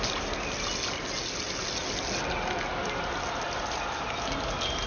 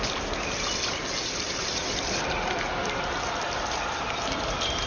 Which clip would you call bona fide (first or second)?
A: first